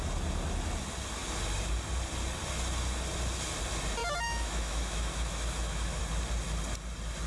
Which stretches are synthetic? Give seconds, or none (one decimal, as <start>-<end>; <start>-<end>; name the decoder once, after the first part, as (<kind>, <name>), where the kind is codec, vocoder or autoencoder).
4.0-6.0 (autoencoder, DAC-VAE)